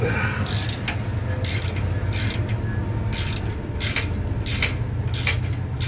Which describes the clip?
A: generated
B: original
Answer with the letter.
B